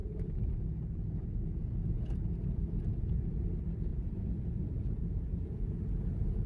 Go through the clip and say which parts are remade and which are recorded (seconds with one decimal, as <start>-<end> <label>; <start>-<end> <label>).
0.0-3.2 remade; 3.2-3.9 recorded; 3.9-6.5 remade